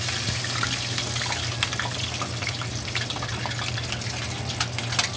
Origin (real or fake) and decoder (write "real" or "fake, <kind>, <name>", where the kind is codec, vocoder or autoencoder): real